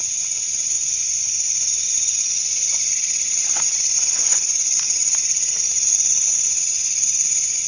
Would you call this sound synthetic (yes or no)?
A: yes